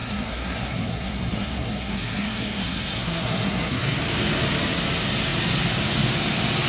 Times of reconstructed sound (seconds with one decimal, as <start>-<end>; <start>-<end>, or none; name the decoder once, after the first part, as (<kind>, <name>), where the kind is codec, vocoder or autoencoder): 0.0-4.0 (codec, SNAC)